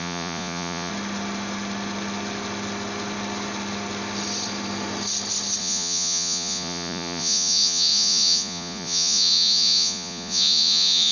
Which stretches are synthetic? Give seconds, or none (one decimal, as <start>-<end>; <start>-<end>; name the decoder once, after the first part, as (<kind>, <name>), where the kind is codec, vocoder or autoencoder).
0.0-0.9 (vocoder, Vocos); 5.6-11.1